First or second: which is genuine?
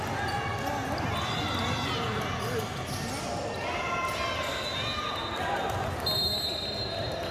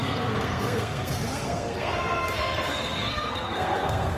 first